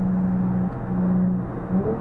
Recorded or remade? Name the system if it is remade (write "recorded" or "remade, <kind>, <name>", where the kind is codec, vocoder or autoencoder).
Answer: recorded